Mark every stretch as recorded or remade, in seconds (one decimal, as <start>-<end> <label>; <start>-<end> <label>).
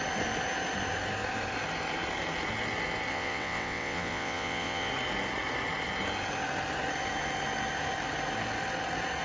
0.0-3.1 recorded; 3.1-4.9 remade; 4.9-9.2 recorded